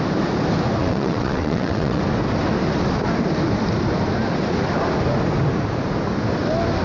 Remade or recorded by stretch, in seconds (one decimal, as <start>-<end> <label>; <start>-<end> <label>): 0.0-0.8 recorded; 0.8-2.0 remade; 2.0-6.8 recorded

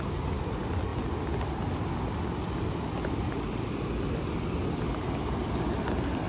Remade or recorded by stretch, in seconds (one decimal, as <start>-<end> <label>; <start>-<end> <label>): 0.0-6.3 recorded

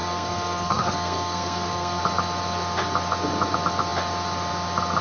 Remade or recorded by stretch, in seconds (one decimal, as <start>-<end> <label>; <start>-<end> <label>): 0.0-2.0 remade; 2.0-5.0 recorded

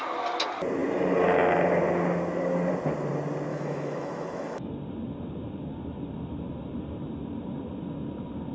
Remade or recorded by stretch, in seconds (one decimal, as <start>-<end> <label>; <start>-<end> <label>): 0.0-3.5 recorded; 3.5-4.7 remade; 4.7-8.5 recorded

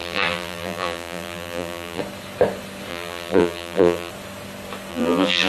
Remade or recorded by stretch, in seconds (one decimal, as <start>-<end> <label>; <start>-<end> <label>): 0.0-2.0 remade; 2.0-2.9 recorded; 2.9-4.1 remade; 4.1-4.9 recorded; 4.9-5.5 remade

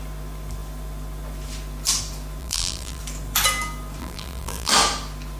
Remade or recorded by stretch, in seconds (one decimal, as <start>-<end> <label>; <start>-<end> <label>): 0.0-2.4 recorded; 2.4-3.0 remade; 3.0-4.0 recorded; 4.0-4.7 remade; 4.7-5.4 recorded

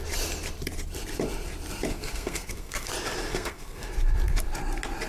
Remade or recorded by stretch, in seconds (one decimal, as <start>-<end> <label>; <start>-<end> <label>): 0.0-1.9 recorded; 1.9-2.9 remade; 2.9-3.3 recorded; 3.3-3.9 remade; 3.9-5.1 recorded

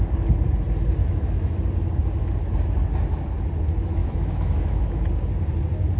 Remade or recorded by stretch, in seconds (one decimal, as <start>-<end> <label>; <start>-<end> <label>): 0.0-1.0 recorded; 1.0-1.6 remade; 1.6-4.0 recorded; 4.0-5.0 remade; 5.0-6.0 recorded